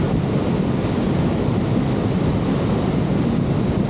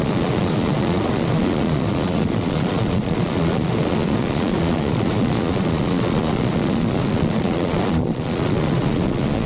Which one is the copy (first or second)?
second